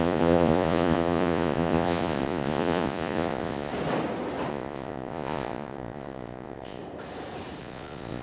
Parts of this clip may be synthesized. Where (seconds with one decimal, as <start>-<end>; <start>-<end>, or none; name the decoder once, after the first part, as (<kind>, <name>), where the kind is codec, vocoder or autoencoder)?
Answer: 0.0-3.7 (vocoder, Vocos); 4.5-6.8; 7.6-8.2